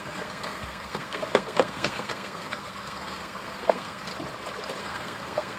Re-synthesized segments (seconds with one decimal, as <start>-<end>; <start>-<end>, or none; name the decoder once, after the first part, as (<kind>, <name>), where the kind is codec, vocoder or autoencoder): 0.0-4.1 (codec, SNAC); 4.8-5.6